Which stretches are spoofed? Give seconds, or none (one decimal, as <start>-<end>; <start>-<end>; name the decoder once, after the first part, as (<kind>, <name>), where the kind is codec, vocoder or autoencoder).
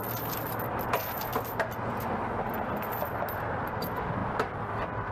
none